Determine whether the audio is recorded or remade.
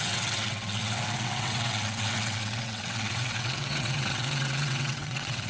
remade